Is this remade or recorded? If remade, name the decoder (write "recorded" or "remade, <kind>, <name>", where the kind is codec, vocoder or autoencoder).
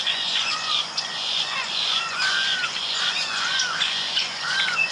remade, vocoder, Vocos